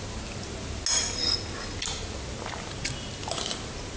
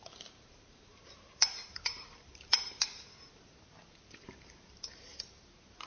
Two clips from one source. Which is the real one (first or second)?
first